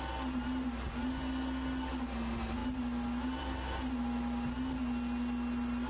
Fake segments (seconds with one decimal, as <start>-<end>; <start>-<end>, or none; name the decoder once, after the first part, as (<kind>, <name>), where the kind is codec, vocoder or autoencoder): none